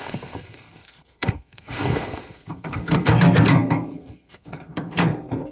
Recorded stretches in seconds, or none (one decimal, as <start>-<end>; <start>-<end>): none